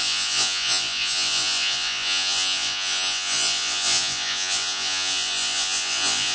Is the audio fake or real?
fake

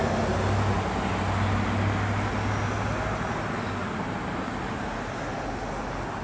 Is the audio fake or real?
real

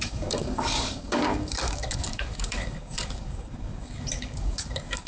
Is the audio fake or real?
fake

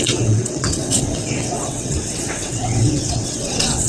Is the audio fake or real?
fake